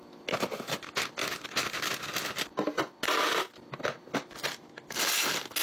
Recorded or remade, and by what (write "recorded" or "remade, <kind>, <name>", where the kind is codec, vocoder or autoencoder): recorded